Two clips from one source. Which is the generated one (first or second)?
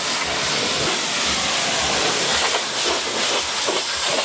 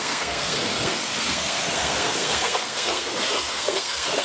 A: second